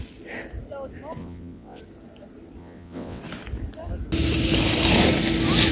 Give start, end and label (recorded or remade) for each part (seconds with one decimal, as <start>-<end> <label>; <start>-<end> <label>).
0.0-1.2 recorded; 1.2-1.8 remade; 1.8-2.6 recorded; 2.6-3.2 remade; 3.2-5.7 recorded